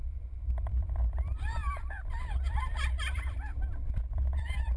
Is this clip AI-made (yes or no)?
yes